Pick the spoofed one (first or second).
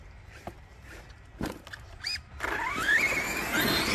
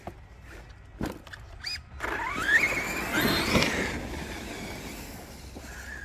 first